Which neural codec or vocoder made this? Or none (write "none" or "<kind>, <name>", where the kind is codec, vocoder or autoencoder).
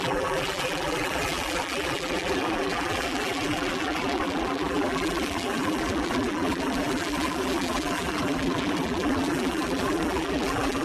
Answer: vocoder, BigVGAN v2